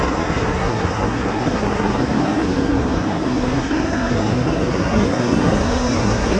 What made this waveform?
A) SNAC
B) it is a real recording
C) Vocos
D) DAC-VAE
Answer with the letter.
A